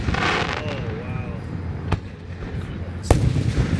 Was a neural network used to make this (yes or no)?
no